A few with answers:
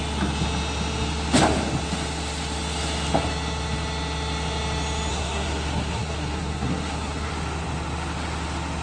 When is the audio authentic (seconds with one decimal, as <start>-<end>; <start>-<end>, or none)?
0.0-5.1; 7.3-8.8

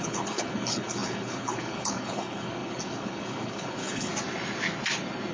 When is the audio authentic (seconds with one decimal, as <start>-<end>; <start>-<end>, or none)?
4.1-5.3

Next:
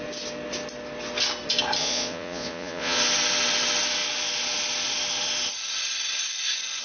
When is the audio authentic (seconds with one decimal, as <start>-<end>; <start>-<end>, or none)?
0.0-1.8; 3.0-6.8

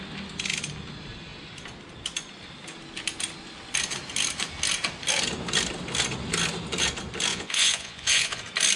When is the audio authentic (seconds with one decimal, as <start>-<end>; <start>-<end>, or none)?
0.0-7.3; 8.4-8.8

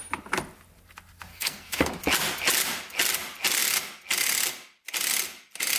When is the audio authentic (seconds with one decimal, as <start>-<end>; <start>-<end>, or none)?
0.0-1.3; 1.9-5.8

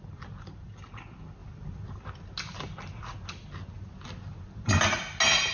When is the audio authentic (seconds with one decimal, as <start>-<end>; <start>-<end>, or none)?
0.0-5.5